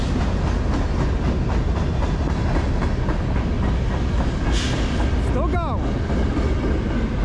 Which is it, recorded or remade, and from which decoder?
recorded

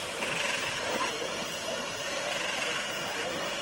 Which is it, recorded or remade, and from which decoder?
remade, vocoder, BigVGAN v2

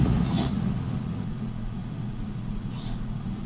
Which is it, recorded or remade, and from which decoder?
remade, vocoder, Vocos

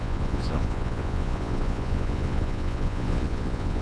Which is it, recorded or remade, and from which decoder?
remade, vocoder, Vocos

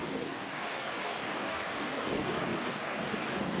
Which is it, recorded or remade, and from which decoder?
remade, codec, DAC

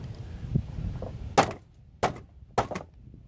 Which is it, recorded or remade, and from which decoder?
recorded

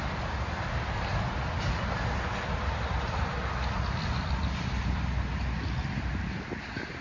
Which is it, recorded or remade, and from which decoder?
recorded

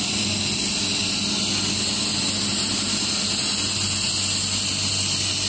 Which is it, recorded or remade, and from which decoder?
recorded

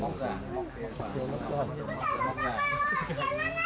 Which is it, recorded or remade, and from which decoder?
recorded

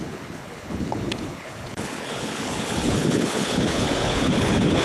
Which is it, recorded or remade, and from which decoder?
remade, codec, HILCodec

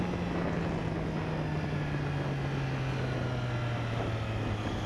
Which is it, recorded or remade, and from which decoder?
recorded